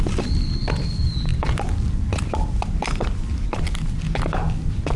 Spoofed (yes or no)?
no